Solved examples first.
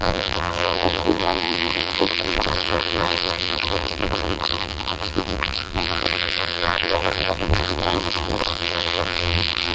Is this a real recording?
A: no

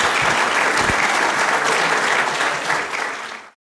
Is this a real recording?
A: yes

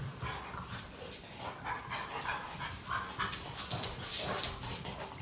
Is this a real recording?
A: yes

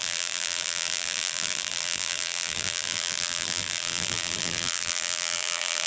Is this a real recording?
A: no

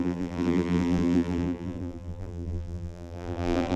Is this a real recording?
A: no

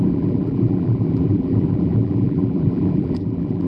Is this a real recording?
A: no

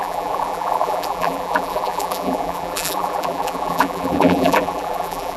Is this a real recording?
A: no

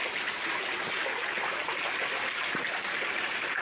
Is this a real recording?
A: yes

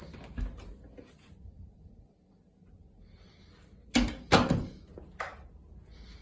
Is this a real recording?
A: yes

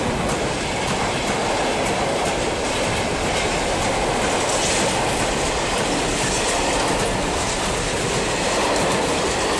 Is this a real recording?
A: no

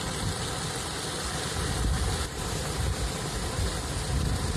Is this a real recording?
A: yes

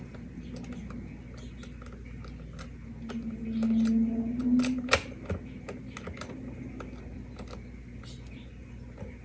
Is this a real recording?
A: yes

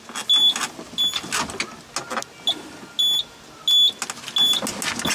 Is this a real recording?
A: yes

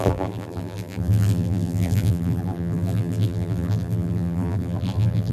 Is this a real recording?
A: no